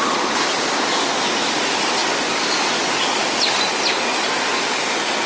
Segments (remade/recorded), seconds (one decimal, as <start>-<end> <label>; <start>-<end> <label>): 0.0-5.3 recorded